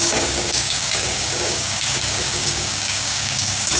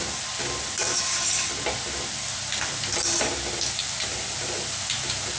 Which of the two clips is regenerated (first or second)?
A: first